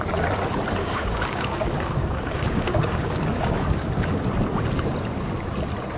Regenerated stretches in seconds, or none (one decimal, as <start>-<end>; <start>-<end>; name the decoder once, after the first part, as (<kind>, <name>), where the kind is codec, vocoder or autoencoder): 0.8-4.2 (codec, DAC)